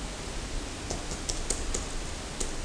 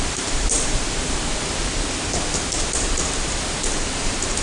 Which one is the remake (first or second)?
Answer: second